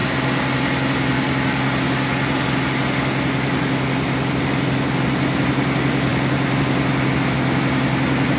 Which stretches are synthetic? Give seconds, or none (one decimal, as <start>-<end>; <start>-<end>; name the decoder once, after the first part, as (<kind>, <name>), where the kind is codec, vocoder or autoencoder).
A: none